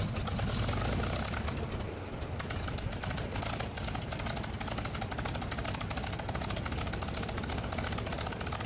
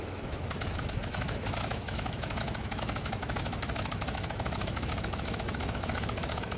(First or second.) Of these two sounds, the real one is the first